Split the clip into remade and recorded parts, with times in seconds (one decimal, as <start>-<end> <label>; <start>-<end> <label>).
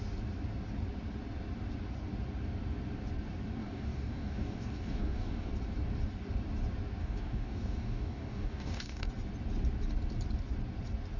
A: 0.0-3.6 recorded; 3.6-5.5 remade; 5.5-7.0 recorded; 7.0-9.1 remade; 9.1-11.2 recorded